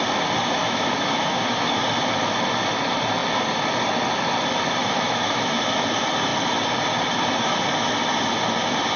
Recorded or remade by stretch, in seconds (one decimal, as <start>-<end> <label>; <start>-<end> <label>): 0.0-0.6 recorded; 0.6-1.8 remade; 1.8-4.8 recorded; 4.8-5.7 remade; 5.7-9.0 recorded